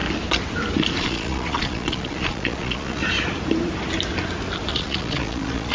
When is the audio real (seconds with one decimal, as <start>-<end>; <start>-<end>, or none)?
0.0-1.0; 3.0-4.7